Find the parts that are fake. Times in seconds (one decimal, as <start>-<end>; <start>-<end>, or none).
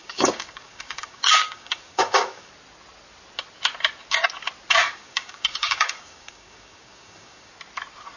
0.0-2.5; 4.8-7.5